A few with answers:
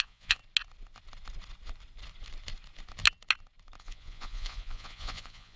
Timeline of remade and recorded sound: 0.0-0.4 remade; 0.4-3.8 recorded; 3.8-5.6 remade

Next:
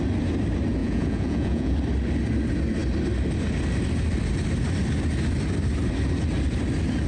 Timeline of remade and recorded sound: 0.0-0.8 recorded; 0.8-1.7 remade; 1.7-7.1 recorded

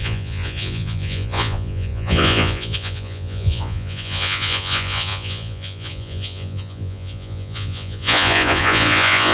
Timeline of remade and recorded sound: 0.0-9.3 remade

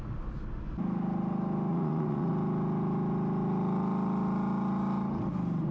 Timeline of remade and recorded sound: 0.0-1.7 recorded; 1.7-2.3 remade; 2.3-5.7 recorded

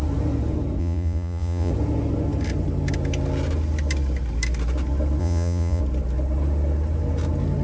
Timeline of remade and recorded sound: 0.0-0.8 recorded; 0.8-1.7 remade; 1.7-5.2 recorded; 5.2-5.8 remade; 5.8-7.6 recorded

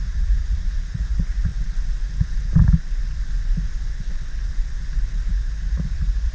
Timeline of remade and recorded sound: 0.0-1.5 remade; 1.5-5.3 recorded; 5.3-6.3 remade